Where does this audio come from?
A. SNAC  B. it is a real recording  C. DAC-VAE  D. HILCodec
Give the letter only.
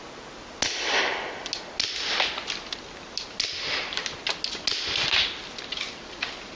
B